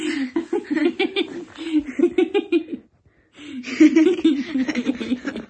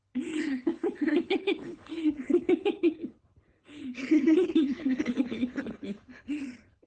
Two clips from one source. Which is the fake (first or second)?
second